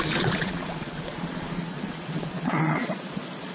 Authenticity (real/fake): fake